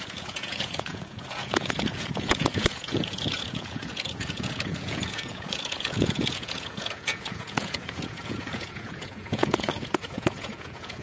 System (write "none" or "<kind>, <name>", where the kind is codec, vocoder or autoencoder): vocoder, Vocos